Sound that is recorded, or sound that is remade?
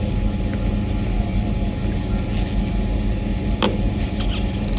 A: recorded